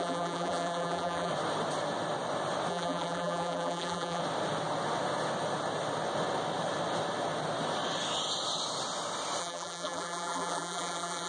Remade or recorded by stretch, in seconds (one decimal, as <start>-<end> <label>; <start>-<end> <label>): 0.0-1.3 remade; 1.3-2.7 recorded; 2.7-4.2 remade; 4.2-9.4 recorded; 9.4-11.3 remade